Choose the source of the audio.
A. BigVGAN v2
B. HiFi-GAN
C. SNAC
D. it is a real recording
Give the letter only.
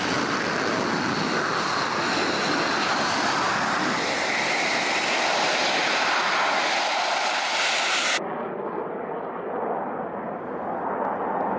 D